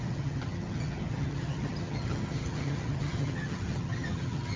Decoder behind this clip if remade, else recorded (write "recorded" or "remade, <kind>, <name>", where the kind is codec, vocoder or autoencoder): remade, vocoder, HiFi-GAN